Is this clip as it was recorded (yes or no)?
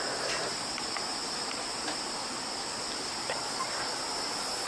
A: no